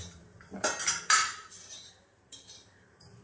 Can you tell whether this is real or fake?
fake